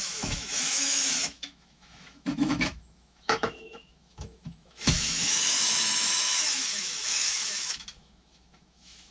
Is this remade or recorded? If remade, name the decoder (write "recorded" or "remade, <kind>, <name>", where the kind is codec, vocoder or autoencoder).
remade, autoencoder, DAC-VAE